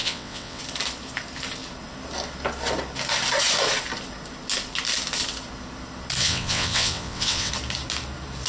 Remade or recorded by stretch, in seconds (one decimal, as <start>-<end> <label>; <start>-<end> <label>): 0.0-0.6 remade; 0.6-6.2 recorded; 6.2-7.5 remade; 7.5-8.5 recorded

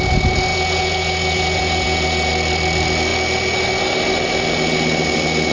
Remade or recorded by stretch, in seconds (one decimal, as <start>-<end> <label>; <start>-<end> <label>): 0.0-0.5 recorded; 0.5-2.3 remade; 2.3-5.5 recorded

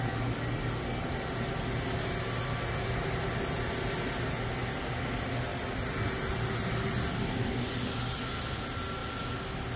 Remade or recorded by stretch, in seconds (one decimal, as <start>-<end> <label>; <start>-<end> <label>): 0.0-9.8 recorded

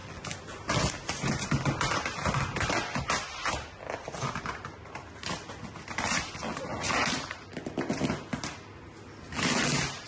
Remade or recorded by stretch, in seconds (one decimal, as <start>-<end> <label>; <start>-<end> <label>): 0.0-10.1 recorded

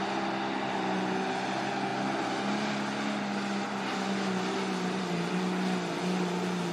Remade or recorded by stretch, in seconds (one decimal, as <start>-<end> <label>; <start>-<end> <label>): 0.0-6.7 recorded

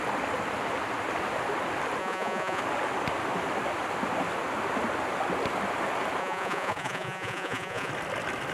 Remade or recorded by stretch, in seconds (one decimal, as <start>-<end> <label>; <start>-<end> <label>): 0.0-2.0 recorded; 2.0-2.6 remade; 2.6-6.2 recorded; 6.2-7.9 remade; 7.9-8.5 recorded